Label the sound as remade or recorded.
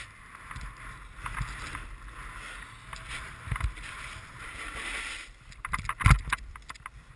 recorded